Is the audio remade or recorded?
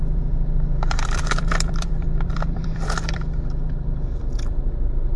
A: remade